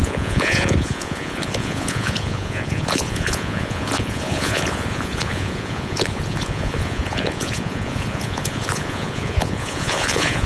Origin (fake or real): fake